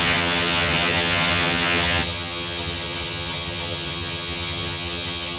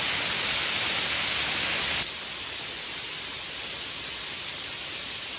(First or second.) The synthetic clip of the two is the first